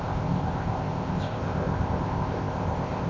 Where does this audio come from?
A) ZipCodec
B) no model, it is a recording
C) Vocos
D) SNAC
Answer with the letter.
A